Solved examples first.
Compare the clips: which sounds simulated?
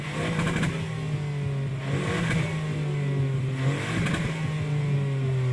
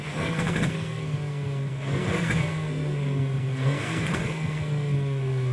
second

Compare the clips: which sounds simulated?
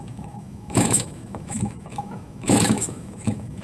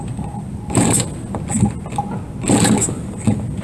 first